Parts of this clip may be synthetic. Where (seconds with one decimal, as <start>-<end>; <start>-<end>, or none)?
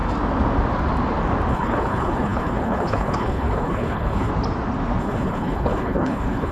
1.5-4.3; 5.0-6.5